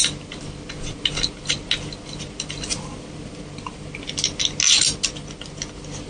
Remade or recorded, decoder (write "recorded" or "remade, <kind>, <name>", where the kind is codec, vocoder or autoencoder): recorded